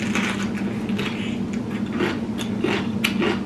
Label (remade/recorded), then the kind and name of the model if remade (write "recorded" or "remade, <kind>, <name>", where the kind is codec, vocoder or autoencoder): recorded